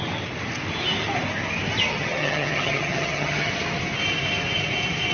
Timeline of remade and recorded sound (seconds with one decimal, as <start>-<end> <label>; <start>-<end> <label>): 0.0-1.9 recorded; 1.9-3.5 remade; 3.5-5.1 recorded